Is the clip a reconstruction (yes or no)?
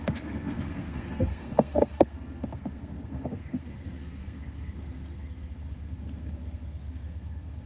yes